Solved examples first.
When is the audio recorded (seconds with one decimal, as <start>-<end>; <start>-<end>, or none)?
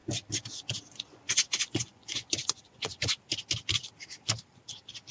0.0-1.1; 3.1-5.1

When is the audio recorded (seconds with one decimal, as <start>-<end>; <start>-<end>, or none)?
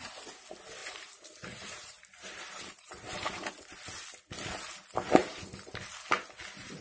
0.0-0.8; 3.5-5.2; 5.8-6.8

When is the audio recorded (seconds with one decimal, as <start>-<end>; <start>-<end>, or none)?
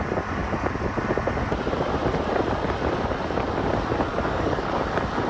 0.0-4.1; 4.8-5.3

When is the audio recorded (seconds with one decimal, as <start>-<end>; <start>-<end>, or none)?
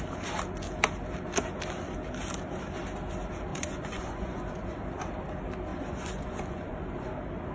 0.0-3.5; 5.0-5.7; 7.1-7.5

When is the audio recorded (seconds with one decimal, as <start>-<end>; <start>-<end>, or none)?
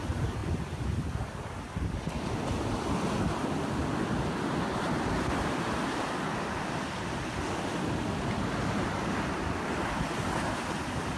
0.0-11.2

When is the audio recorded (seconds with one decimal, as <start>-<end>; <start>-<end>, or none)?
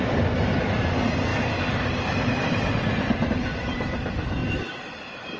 0.0-5.4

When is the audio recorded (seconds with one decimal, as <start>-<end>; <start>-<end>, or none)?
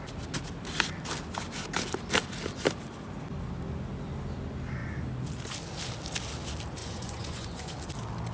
0.0-6.8; 7.7-8.3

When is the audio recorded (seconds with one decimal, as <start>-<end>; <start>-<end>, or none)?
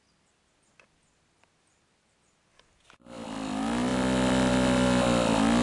0.0-5.6